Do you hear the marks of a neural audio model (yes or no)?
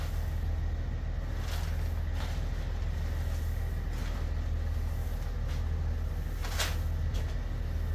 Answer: no